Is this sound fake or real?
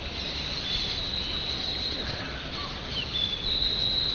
real